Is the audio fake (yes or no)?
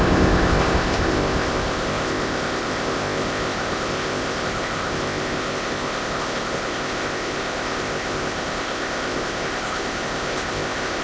yes